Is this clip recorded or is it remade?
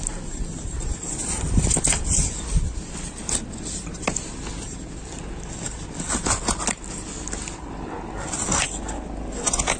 recorded